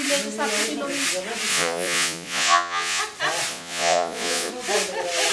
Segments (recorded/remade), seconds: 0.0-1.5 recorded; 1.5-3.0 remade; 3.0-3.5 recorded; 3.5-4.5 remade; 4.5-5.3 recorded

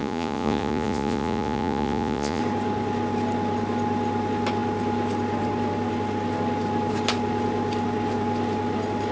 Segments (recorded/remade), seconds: 0.0-2.4 remade; 2.4-9.1 recorded